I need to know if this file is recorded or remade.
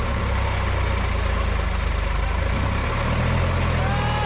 recorded